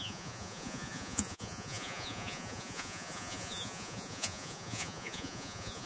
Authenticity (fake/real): fake